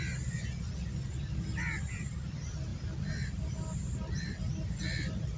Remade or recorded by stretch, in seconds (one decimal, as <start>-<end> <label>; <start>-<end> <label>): 0.0-5.4 recorded